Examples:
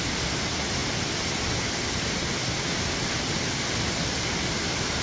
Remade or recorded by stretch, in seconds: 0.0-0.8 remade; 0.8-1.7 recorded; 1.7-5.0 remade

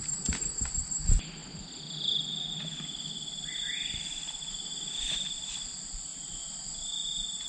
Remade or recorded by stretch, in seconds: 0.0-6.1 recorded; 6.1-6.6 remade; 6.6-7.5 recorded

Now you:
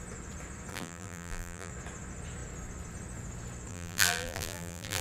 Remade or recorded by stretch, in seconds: 0.0-0.7 recorded; 0.7-1.7 remade; 1.7-3.7 recorded; 3.7-5.0 remade

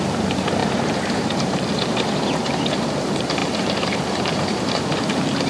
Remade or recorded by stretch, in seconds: 0.0-0.6 recorded; 0.6-1.6 remade; 1.6-3.4 recorded; 3.4-4.8 remade; 4.8-5.5 recorded

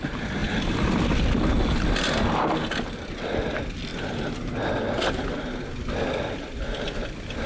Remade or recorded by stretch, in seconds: 0.0-7.5 recorded

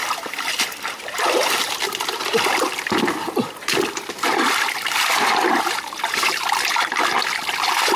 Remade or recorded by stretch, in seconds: 0.0-8.0 remade